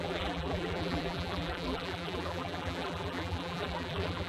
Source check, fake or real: fake